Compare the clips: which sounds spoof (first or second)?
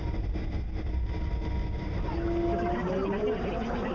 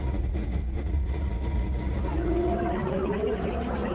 second